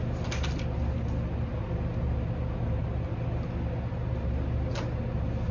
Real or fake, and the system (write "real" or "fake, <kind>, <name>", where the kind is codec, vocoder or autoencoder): real